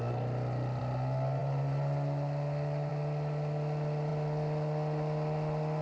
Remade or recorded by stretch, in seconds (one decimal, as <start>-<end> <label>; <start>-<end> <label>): 0.0-1.4 recorded; 1.4-2.9 remade; 2.9-5.8 recorded